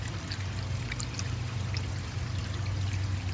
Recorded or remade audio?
recorded